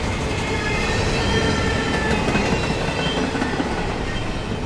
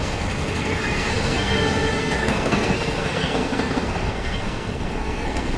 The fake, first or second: second